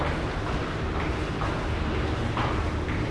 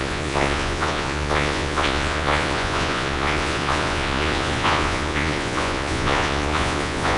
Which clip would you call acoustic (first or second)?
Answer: first